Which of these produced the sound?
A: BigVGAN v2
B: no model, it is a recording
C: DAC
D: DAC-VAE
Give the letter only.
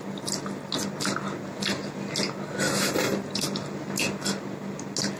B